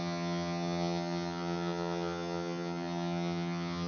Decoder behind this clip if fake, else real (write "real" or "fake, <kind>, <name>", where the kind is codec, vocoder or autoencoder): fake, vocoder, HiFi-GAN